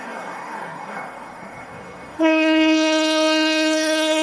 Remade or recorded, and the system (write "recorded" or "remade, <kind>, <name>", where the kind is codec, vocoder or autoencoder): remade, codec, SNAC